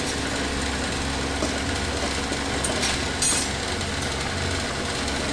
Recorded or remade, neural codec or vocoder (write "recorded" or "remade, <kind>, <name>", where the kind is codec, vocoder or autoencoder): recorded